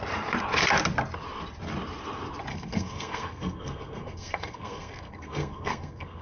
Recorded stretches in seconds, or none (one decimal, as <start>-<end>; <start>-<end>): 0.0-2.5